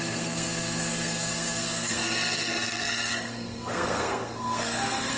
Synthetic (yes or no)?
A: yes